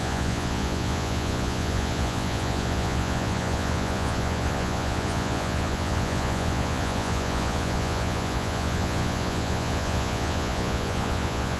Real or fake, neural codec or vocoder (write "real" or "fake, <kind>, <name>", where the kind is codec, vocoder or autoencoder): fake, vocoder, Vocos